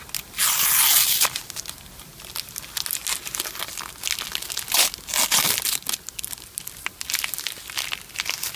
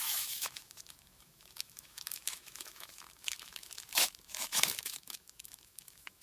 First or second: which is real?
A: first